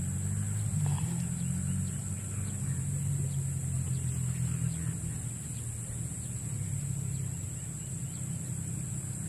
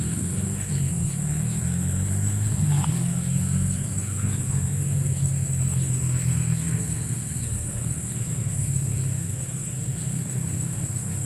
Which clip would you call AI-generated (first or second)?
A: second